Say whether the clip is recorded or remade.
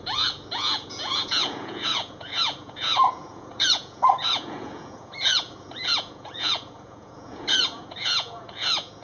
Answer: remade